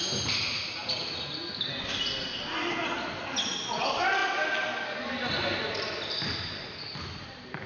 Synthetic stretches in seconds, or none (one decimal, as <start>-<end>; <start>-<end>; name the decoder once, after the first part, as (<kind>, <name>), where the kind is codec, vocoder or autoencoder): none